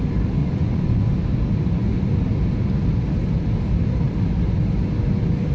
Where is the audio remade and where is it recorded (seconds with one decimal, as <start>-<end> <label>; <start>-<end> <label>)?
0.0-0.4 recorded; 0.4-1.1 remade; 1.1-5.5 recorded